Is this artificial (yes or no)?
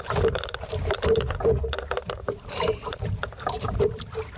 yes